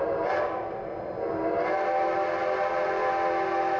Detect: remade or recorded recorded